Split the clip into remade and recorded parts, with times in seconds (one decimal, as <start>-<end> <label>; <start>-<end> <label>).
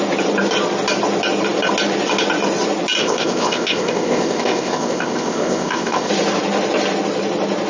0.0-3.0 recorded; 3.0-6.1 remade; 6.1-7.7 recorded